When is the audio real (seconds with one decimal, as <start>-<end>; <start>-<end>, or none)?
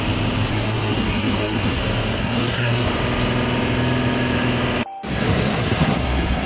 0.0-0.5; 1.8-2.2; 2.9-5.1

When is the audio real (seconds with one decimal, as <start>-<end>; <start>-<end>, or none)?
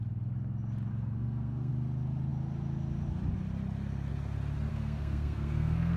0.0-0.9; 1.7-4.7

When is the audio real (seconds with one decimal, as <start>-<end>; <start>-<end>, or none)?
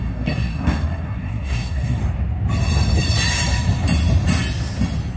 2.0-5.2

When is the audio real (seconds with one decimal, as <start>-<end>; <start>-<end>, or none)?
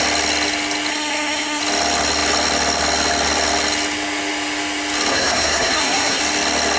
0.0-0.9; 1.6-5.1; 6.2-6.8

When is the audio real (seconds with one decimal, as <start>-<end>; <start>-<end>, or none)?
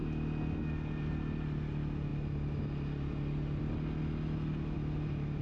0.0-5.4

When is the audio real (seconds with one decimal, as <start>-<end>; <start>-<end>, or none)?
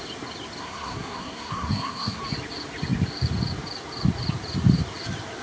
0.0-0.6; 2.2-5.4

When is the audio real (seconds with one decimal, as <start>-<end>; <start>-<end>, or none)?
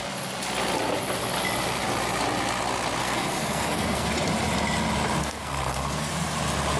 0.0-3.0; 4.1-5.2; 6.1-6.8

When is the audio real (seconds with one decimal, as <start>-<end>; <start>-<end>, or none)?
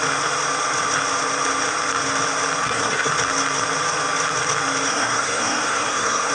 0.0-2.6; 3.1-4.9